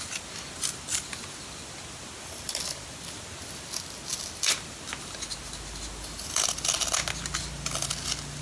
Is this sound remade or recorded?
recorded